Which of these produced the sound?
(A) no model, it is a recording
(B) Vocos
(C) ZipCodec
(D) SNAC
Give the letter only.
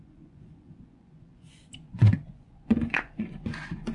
B